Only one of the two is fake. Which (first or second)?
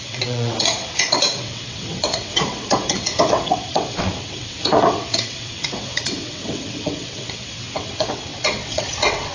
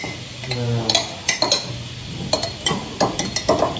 first